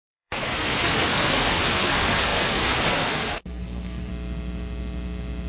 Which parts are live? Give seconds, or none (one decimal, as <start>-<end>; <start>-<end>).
4.1-5.5